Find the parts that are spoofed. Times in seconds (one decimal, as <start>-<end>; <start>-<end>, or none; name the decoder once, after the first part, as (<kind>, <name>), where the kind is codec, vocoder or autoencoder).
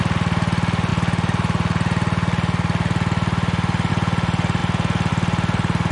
none